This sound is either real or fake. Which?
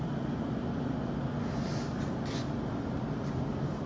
real